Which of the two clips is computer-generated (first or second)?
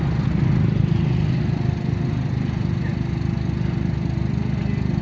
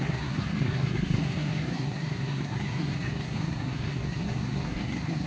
second